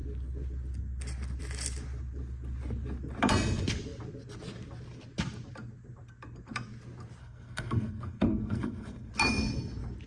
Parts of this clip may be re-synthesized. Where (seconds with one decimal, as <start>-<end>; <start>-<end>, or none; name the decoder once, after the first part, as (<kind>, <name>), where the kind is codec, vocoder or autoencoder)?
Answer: 7.2-9.1 (codec, SNAC)